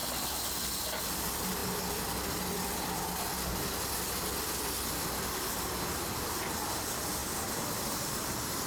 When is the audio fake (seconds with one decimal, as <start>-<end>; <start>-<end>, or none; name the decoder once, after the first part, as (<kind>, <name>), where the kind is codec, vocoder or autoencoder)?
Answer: 7.2-8.7 (vocoder, BigVGAN v2)